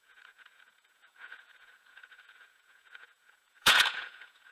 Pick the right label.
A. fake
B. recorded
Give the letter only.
A